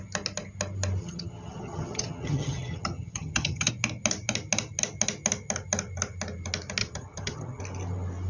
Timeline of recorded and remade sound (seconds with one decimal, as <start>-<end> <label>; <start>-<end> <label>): 0.0-1.0 recorded; 1.0-3.7 remade; 3.7-6.8 recorded; 6.8-7.6 remade; 7.6-8.3 recorded